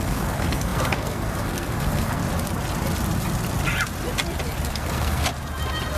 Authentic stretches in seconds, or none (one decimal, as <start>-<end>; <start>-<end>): 2.2-4.7; 5.3-6.0